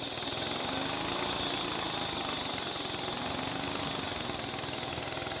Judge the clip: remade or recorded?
recorded